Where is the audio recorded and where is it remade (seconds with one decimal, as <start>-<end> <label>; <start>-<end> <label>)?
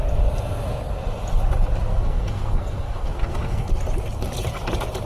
0.0-1.9 recorded; 1.9-3.7 remade; 3.7-5.1 recorded